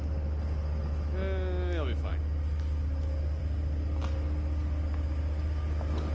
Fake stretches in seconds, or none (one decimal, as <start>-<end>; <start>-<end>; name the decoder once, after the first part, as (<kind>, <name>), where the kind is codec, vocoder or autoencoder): none